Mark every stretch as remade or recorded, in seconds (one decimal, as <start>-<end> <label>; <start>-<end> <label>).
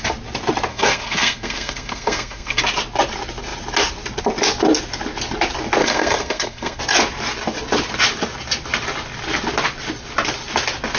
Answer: 0.0-0.7 recorded; 0.7-2.6 remade; 2.6-5.8 recorded; 5.8-6.8 remade; 6.8-11.0 recorded